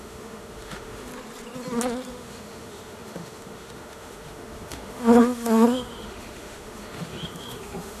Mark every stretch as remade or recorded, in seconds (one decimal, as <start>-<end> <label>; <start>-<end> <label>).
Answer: 0.0-1.1 remade; 1.1-2.1 recorded; 2.1-8.0 remade